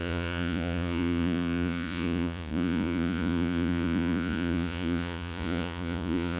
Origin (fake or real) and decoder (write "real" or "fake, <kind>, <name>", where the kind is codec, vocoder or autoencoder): fake, vocoder, Vocos